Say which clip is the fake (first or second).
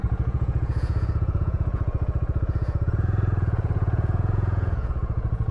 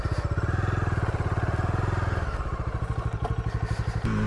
first